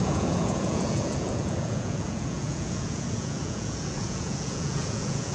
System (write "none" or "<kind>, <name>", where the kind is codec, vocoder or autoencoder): vocoder, Vocos